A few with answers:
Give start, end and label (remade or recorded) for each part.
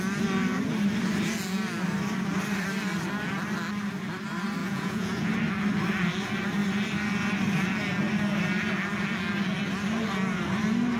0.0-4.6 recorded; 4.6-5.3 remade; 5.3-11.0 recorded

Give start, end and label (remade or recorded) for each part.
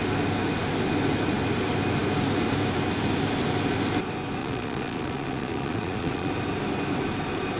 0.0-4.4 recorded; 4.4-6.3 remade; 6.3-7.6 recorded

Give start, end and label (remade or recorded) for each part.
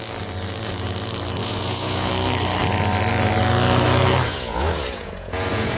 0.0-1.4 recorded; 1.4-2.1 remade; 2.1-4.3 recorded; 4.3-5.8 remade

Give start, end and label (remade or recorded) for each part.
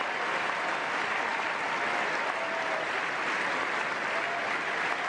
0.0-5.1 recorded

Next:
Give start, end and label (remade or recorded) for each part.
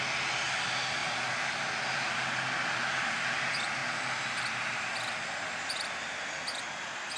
0.0-7.2 recorded